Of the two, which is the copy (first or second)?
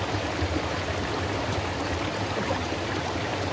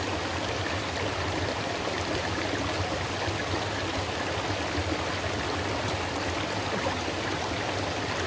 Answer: first